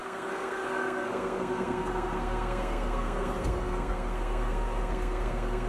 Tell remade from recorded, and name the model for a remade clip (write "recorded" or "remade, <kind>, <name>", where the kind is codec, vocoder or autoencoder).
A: remade, codec, SNAC